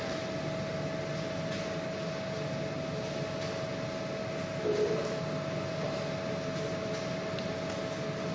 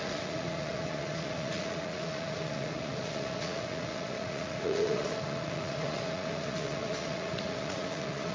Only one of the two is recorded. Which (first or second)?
first